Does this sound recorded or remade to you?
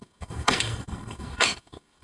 remade